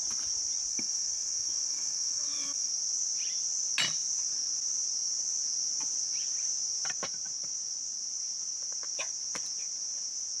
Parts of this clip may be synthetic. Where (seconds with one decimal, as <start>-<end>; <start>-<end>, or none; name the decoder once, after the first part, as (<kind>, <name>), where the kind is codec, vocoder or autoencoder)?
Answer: 0.7-2.7 (autoencoder, DAC-VAE)